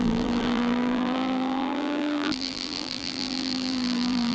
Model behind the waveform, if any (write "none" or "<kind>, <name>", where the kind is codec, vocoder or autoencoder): vocoder, BigVGAN v2